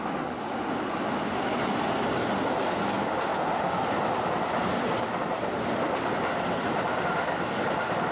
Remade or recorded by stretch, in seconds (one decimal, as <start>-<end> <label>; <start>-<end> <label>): 0.0-8.1 recorded